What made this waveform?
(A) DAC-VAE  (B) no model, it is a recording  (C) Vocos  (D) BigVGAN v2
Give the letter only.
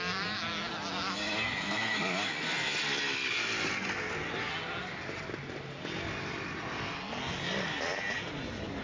B